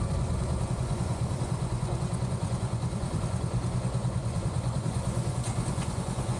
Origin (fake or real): fake